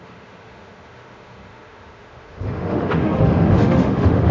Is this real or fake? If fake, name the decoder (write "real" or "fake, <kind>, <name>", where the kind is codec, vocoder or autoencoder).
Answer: fake, autoencoder, DAC-VAE